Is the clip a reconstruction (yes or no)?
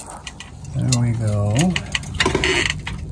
no